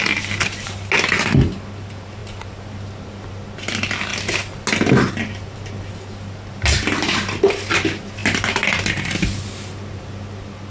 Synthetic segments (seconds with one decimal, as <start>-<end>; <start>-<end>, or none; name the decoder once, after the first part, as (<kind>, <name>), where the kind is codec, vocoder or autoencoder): none